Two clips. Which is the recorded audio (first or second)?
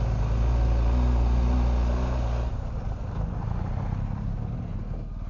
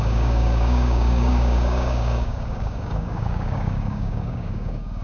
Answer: first